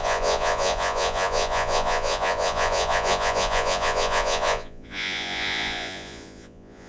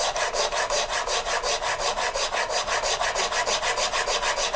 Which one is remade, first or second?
first